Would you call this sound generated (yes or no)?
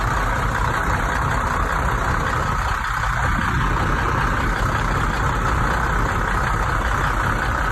no